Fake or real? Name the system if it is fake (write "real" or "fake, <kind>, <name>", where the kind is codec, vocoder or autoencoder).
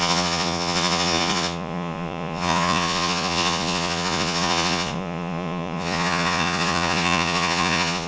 fake, vocoder, Vocos